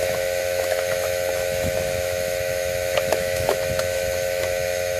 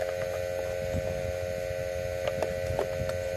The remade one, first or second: first